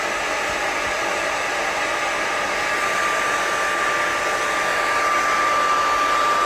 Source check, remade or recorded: recorded